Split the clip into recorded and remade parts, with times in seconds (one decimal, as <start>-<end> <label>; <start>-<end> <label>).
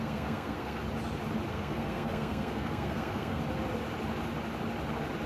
0.0-0.8 remade; 0.8-1.5 recorded; 1.5-3.4 remade; 3.4-5.3 recorded